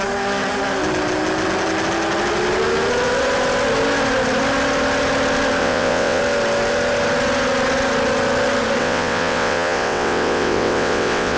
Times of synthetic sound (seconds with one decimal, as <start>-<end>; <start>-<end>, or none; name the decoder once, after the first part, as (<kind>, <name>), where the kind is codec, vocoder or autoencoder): 5.6-6.2 (vocoder, WaveNeXt); 8.8-11.4